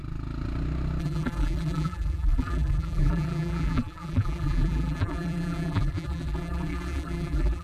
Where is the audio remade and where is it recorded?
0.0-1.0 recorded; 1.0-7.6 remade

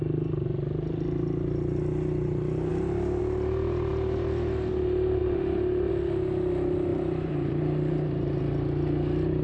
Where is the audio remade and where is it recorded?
0.0-6.9 recorded; 6.9-8.4 remade; 8.4-9.4 recorded

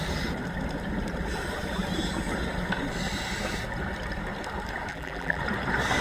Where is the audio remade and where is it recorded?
0.0-4.9 recorded; 4.9-5.4 remade; 5.4-6.0 recorded

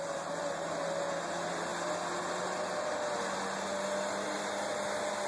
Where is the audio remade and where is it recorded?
0.0-5.3 recorded

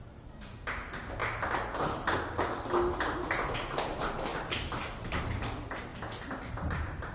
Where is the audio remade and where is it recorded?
0.0-1.2 remade; 1.2-3.5 recorded; 3.5-5.9 remade; 5.9-6.5 recorded; 6.5-7.1 remade